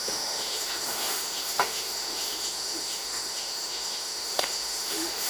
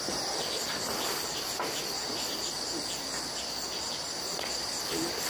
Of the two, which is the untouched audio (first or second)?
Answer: second